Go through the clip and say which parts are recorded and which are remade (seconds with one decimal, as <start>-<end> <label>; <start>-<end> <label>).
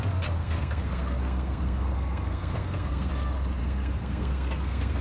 0.0-0.4 recorded; 0.4-3.1 remade; 3.1-3.6 recorded; 3.6-5.0 remade